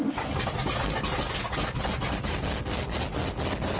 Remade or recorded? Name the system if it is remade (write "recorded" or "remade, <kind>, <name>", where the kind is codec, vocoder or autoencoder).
recorded